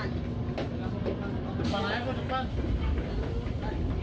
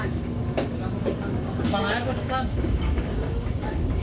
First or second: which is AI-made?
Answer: second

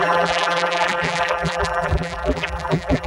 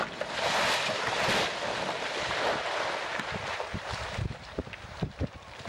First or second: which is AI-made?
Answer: first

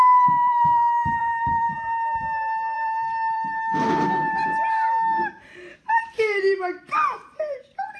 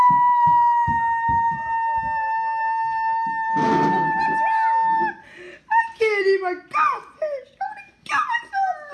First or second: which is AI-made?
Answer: first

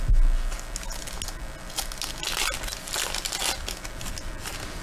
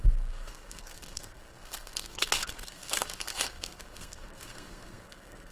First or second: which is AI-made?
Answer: second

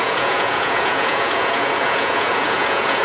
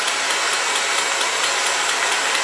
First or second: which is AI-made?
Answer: first